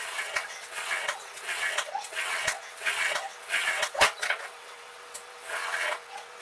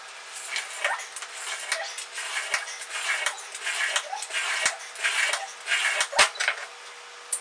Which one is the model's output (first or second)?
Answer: first